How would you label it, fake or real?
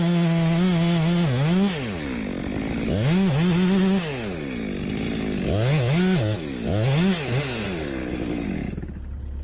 real